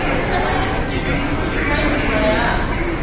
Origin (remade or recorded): recorded